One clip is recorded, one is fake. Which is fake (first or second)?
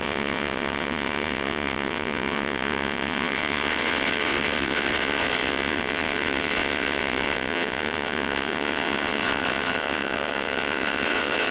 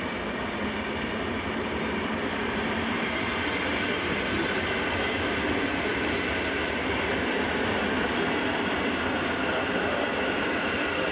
first